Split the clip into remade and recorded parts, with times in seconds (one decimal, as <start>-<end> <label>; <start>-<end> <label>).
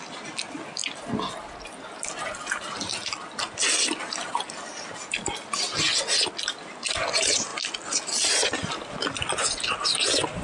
0.0-10.4 recorded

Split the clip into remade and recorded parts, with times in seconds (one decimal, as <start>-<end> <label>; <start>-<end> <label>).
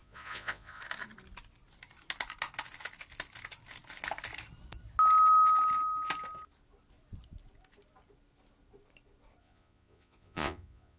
0.0-0.8 remade; 0.8-9.4 recorded; 9.4-11.0 remade